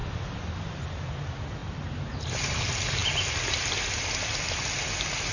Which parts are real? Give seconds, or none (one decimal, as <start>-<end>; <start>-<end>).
0.0-5.3